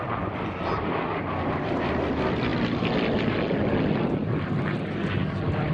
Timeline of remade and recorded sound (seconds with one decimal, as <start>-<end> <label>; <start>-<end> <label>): 0.0-5.7 recorded